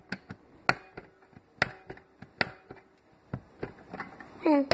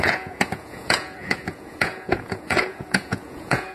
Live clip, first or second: first